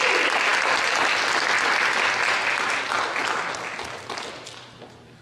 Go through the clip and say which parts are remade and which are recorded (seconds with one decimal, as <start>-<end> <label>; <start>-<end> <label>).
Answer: 0.0-5.2 recorded